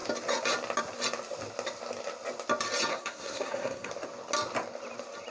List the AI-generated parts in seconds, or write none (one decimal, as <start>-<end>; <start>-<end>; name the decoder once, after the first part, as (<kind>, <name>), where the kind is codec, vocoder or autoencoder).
2.9-3.9 (codec, SNAC)